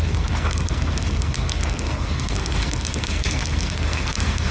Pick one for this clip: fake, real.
fake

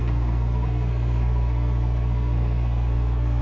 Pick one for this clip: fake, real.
fake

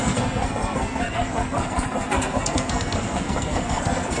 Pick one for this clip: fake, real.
fake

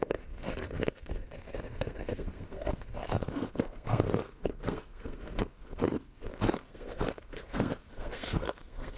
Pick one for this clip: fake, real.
fake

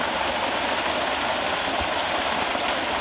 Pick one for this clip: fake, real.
real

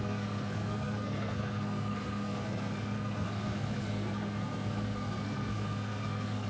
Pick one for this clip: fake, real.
fake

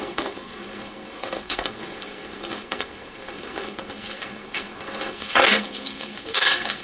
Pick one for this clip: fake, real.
fake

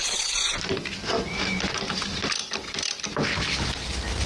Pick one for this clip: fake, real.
real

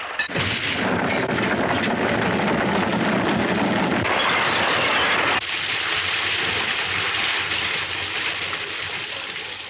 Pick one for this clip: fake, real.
real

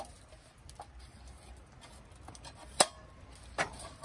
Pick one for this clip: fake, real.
real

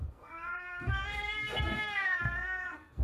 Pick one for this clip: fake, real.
fake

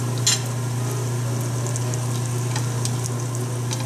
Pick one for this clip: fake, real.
real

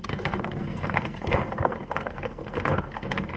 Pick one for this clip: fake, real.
fake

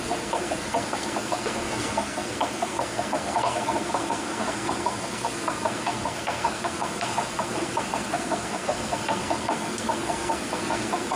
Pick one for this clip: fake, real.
fake